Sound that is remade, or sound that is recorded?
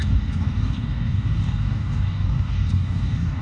remade